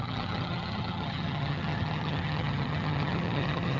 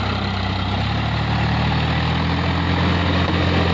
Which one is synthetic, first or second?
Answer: first